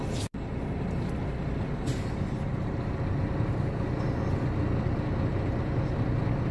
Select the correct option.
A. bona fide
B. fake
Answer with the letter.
A